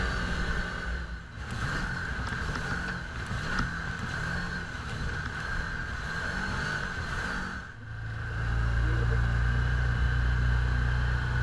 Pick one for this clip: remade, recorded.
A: recorded